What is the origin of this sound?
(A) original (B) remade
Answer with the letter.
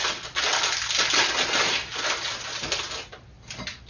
A